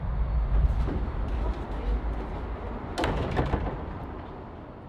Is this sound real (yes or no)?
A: yes